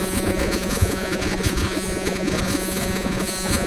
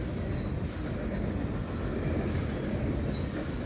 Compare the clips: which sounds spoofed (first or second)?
first